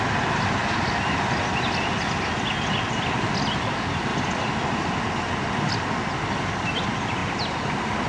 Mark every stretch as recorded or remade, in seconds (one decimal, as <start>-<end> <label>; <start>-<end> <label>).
0.0-4.1 recorded; 4.1-5.0 remade; 5.0-8.1 recorded